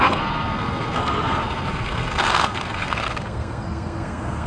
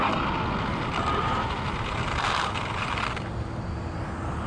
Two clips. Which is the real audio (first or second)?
second